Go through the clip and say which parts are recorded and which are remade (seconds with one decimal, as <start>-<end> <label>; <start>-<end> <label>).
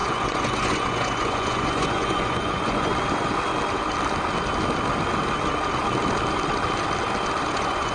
0.0-2.9 remade; 2.9-7.5 recorded; 7.5-7.9 remade